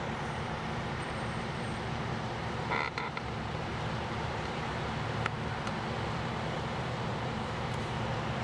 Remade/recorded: remade